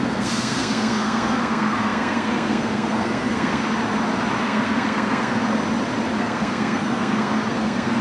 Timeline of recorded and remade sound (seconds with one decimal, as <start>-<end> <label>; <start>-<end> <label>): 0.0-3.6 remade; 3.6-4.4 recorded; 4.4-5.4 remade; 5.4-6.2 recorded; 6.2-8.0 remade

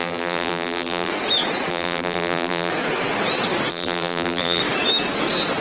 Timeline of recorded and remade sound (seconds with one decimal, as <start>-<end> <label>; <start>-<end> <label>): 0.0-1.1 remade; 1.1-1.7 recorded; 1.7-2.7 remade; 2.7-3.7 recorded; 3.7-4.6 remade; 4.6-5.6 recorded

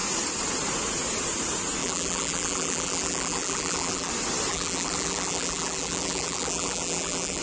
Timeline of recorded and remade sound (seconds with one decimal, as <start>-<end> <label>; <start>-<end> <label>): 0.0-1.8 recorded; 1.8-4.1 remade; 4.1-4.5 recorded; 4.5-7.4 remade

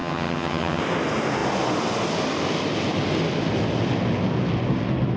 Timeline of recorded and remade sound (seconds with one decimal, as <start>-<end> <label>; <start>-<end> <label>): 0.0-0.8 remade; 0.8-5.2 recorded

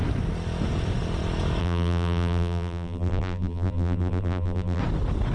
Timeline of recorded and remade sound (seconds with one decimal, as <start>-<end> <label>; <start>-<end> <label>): 0.0-1.6 recorded; 1.6-4.8 remade; 4.8-5.3 recorded

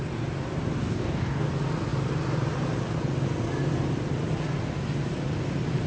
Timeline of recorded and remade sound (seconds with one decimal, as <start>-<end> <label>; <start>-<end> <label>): 0.0-0.8 recorded; 0.8-1.5 remade; 1.5-5.9 recorded